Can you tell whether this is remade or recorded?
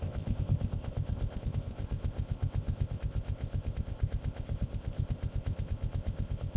remade